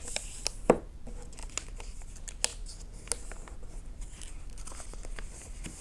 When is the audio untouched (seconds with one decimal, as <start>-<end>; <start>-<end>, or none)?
0.0-5.8